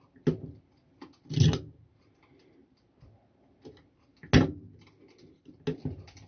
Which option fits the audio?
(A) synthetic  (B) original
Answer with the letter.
B